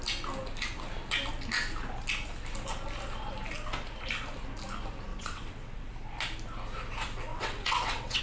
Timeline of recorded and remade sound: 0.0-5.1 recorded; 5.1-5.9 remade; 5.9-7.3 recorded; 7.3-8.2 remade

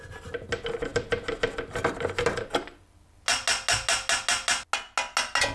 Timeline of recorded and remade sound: 0.0-5.5 recorded

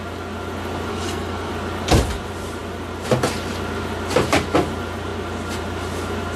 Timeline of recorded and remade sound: 0.0-0.9 recorded; 0.9-1.5 remade; 1.5-6.4 recorded

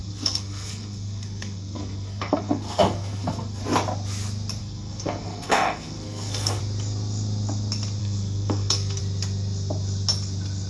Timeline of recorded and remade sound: 0.0-3.6 remade; 3.6-4.6 recorded; 4.6-6.6 remade; 6.6-8.0 recorded; 8.0-9.0 remade; 9.0-10.7 recorded

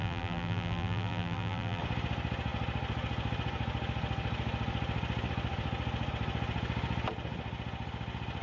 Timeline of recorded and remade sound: 0.0-1.8 remade; 1.8-8.4 recorded

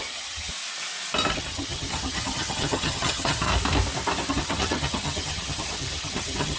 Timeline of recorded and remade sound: 0.0-0.5 remade; 0.5-1.3 recorded; 1.3-3.5 remade; 3.5-4.3 recorded; 4.3-6.6 remade

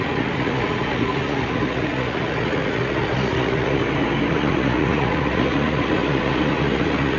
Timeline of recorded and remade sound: 0.0-3.8 remade; 3.8-4.3 recorded; 4.3-7.2 remade